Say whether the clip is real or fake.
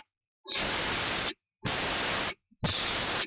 real